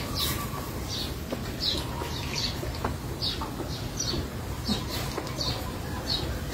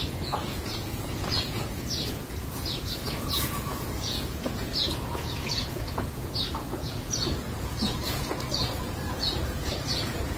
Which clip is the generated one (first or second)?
second